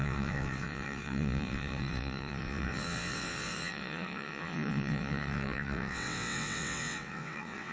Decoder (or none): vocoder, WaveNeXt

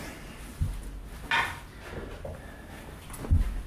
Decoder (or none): none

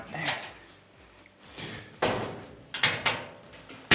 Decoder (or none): none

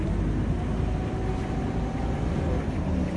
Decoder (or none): none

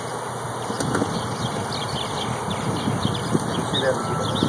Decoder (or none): none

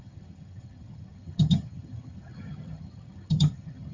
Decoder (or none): vocoder, HiFi-GAN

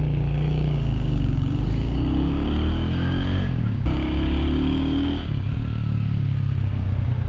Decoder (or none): codec, DAC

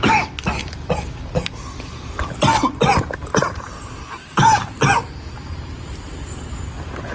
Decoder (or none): none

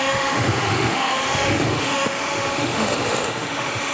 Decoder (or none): autoencoder, DAC-VAE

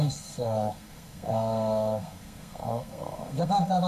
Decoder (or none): codec, SNAC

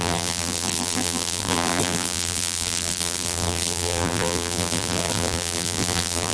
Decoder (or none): vocoder, BigVGAN v2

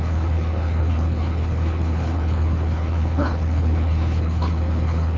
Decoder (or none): codec, HILCodec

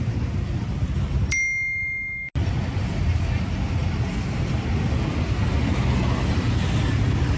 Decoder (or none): none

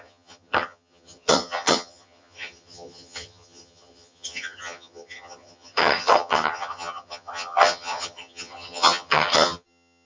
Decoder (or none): vocoder, HiFi-GAN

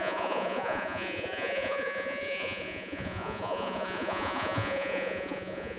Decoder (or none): vocoder, Vocos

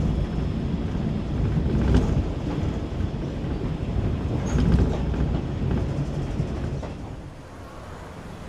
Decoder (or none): none